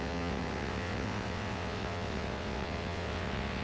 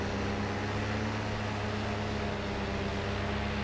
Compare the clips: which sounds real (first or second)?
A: second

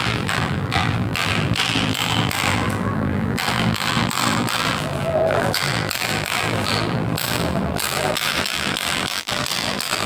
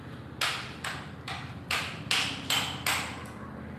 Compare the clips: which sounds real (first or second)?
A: second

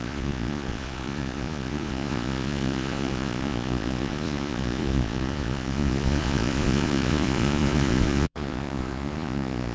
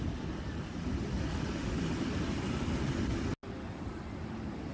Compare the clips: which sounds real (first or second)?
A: second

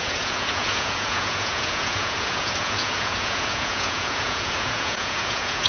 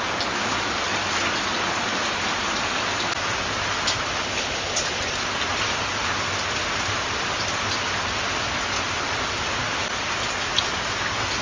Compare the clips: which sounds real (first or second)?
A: second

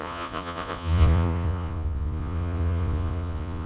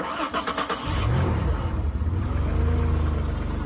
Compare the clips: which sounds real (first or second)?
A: second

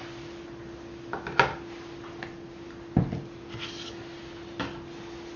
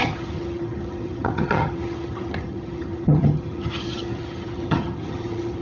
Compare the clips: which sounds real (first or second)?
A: first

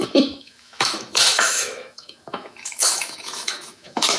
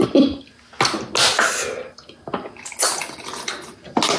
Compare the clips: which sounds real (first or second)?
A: second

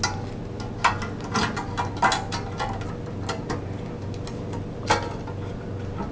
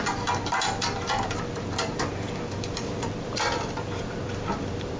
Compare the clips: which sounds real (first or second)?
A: first